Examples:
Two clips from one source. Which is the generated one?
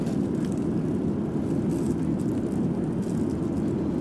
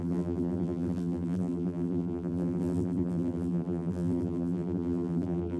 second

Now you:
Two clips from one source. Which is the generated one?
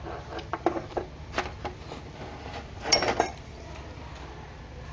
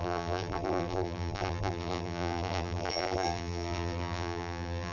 second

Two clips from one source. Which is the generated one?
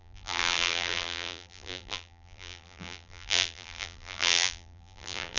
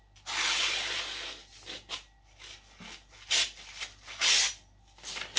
first